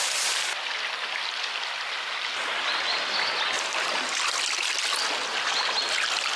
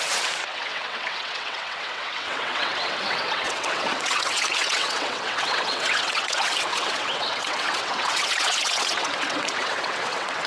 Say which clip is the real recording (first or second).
first